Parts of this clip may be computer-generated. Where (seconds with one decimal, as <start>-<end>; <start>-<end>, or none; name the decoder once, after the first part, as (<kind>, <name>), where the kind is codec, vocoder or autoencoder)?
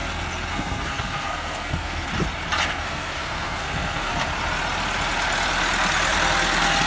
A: 0.5-2.1 (codec, SNAC); 2.7-4.1